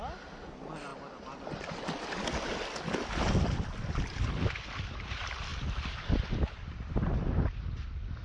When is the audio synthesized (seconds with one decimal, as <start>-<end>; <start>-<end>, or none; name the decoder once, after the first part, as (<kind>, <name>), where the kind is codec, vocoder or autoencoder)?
none